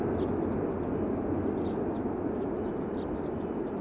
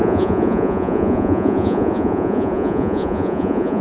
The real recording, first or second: first